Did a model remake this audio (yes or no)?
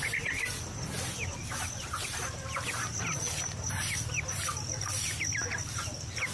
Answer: no